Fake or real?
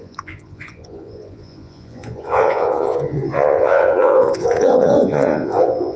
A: fake